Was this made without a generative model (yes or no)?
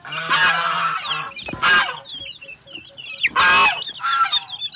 yes